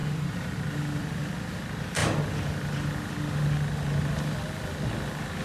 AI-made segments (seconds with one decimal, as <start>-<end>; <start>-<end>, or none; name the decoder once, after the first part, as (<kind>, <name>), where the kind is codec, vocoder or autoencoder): 0.0-1.3 (vocoder, BigVGAN v2)